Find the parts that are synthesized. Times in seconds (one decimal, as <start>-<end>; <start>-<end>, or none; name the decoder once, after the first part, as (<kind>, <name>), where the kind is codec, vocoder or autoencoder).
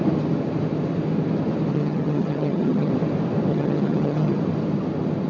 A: 1.7-2.9 (vocoder, HiFi-GAN); 3.5-4.4